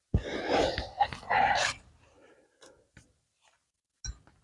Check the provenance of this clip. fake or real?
real